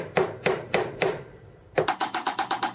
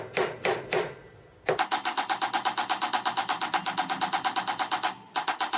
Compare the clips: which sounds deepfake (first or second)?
first